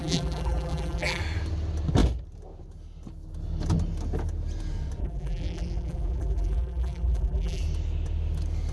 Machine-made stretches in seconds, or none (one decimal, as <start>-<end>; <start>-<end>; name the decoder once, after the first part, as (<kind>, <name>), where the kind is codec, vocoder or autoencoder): 0.0-1.2 (vocoder, BigVGAN v2); 5.0-7.6